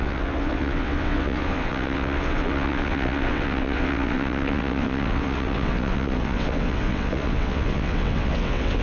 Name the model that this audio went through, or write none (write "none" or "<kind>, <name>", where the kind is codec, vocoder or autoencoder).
vocoder, WaveNeXt